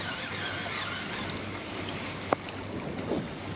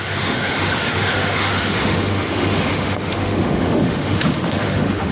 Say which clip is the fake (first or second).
second